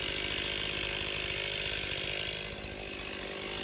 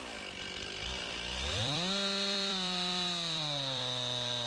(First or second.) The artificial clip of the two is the second